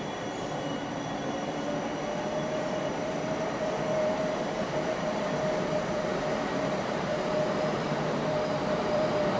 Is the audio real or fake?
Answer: fake